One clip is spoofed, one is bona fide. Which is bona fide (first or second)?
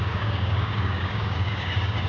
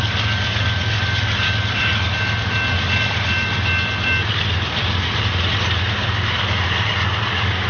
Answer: second